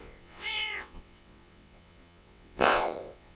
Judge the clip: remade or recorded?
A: remade